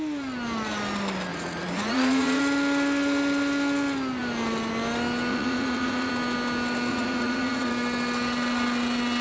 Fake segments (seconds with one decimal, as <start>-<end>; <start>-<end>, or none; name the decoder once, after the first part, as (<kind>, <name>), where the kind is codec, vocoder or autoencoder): 1.3-2.4 (vocoder, Vocos); 5.3-6.1; 6.9-7.7